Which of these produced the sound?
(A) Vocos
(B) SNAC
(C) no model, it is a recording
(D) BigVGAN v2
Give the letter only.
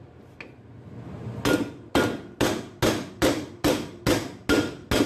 C